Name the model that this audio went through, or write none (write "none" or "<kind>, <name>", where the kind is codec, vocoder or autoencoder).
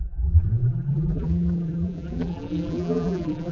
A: vocoder, BigVGAN v2